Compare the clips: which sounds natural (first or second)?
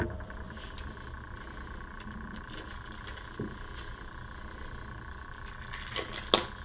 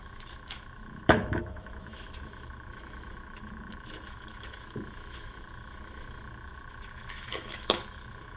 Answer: first